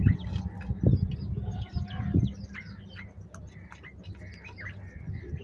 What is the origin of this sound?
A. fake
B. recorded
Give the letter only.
B